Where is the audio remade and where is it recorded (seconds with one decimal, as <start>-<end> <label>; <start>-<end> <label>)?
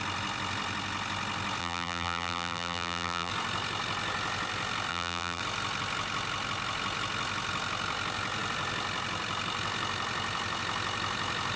0.0-1.6 recorded; 1.6-3.3 remade; 3.3-4.9 recorded; 4.9-5.4 remade; 5.4-11.6 recorded